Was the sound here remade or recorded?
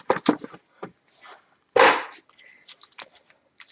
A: recorded